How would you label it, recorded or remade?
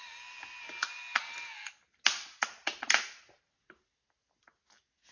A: recorded